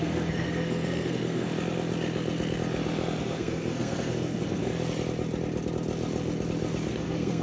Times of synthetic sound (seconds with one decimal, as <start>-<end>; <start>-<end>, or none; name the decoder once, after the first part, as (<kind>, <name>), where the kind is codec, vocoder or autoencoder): 0.0-1.5 (codec, SNAC); 3.2-4.7; 6.9-7.4